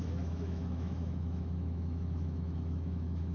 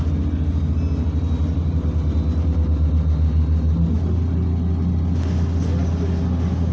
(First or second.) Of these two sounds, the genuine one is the second